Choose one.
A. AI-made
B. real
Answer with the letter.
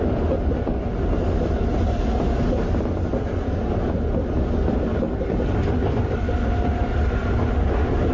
B